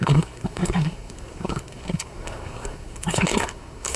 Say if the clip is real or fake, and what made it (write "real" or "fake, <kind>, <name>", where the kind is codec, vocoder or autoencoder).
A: fake, codec, SNAC